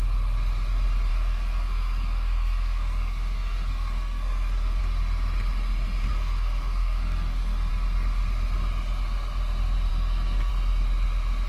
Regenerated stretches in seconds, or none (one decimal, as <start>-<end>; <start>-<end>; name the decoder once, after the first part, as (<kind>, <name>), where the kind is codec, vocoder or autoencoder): 1.1-4.8 (codec, SNAC); 6.1-7.7; 9.9-10.5